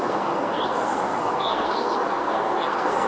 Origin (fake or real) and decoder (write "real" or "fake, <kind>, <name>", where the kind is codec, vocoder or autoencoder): fake, codec, SNAC